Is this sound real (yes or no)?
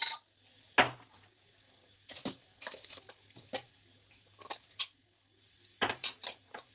yes